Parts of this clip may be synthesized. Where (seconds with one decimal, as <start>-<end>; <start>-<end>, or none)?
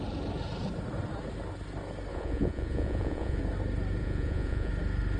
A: 2.1-3.4; 4.0-4.7